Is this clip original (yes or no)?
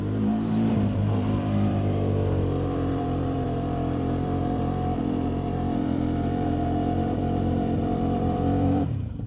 no